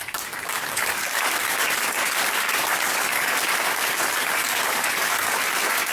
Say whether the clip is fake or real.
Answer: fake